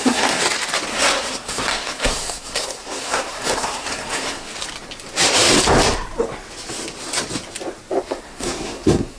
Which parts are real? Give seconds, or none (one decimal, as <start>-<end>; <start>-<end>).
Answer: 0.4-0.9; 4.5-8.0